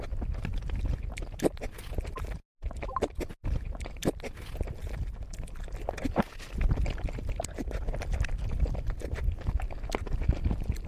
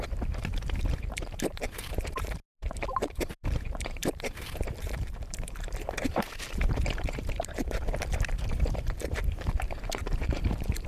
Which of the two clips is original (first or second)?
first